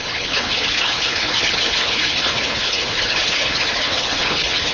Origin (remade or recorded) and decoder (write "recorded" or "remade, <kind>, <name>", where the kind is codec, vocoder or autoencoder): remade, codec, HILCodec